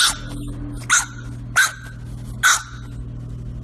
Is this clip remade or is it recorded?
recorded